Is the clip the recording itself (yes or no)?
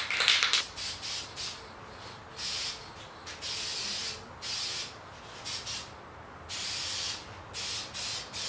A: yes